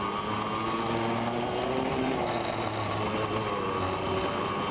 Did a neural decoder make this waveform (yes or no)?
no